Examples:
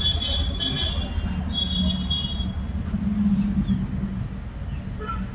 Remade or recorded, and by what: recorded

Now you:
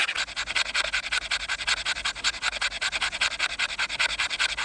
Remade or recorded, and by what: recorded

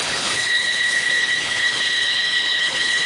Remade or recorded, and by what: remade, codec, HILCodec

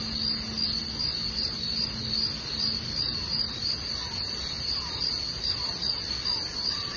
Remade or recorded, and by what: recorded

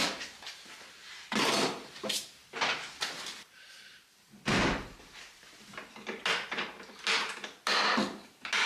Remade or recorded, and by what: recorded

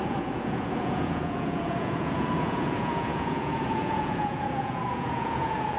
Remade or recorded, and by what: remade, vocoder, Vocos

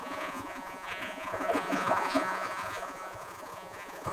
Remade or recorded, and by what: remade, vocoder, Vocos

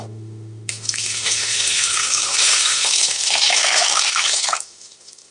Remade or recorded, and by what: remade, autoencoder, DAC-VAE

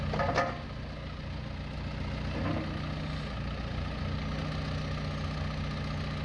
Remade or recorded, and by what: recorded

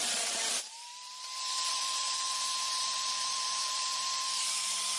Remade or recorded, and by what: remade, vocoder, BigVGAN v2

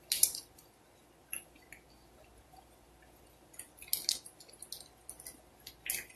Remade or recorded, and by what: recorded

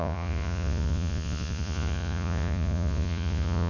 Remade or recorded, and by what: remade, vocoder, Vocos